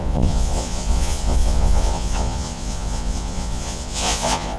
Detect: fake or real fake